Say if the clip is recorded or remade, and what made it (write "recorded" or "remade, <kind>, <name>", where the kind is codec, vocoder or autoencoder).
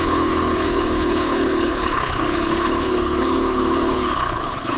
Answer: remade, codec, HILCodec